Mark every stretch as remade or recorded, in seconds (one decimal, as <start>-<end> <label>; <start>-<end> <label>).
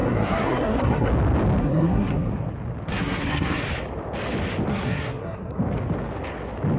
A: 0.0-1.1 remade; 1.1-1.6 recorded; 1.6-2.3 remade; 2.3-2.9 recorded; 2.9-3.6 remade; 3.6-4.7 recorded; 4.7-5.6 remade; 5.6-6.8 recorded